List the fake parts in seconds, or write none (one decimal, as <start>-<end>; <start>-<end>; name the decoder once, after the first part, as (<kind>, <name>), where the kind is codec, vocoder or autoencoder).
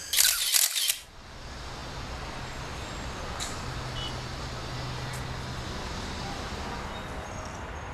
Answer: none